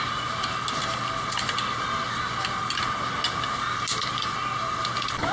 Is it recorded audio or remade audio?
recorded